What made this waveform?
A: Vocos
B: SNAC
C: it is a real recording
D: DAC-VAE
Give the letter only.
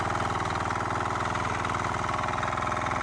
C